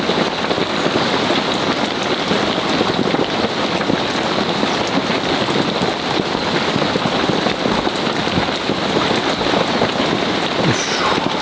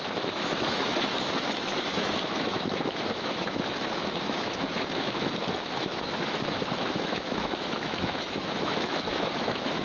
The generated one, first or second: second